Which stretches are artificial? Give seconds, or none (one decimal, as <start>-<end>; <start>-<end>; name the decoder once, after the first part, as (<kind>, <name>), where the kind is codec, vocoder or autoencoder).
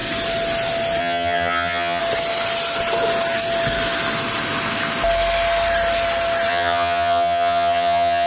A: 1.0-2.0 (vocoder, HiFi-GAN); 6.5-8.3